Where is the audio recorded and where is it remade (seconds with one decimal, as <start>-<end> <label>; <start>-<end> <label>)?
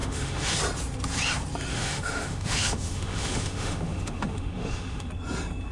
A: 0.0-0.6 remade; 0.6-1.7 recorded; 1.7-5.1 remade; 5.1-5.7 recorded